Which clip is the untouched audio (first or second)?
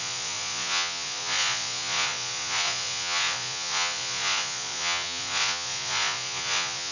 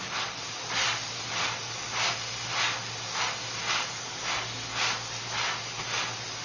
second